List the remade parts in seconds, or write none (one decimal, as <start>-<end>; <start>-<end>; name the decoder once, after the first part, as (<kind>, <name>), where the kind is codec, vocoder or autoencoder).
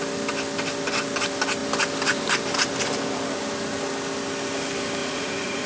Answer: 5.0-5.7 (vocoder, Vocos)